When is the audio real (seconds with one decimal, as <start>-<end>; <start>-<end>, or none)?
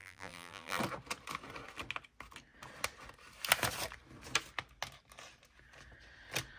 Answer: 0.8-6.6